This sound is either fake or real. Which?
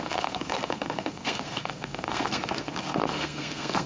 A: fake